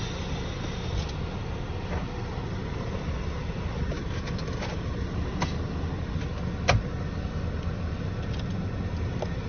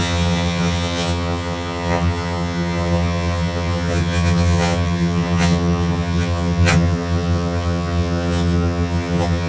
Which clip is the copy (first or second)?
second